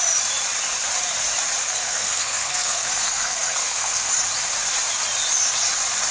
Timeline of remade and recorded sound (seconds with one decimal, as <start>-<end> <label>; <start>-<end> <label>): 0.0-1.6 recorded; 1.6-4.1 remade; 4.1-6.1 recorded